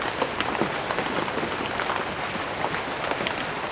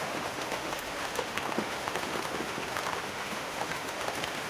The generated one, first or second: second